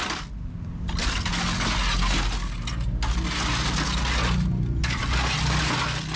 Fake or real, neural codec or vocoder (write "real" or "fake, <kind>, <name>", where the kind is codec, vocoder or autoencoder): real